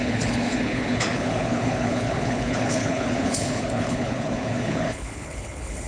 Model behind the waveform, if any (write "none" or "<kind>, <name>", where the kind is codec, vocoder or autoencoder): codec, HILCodec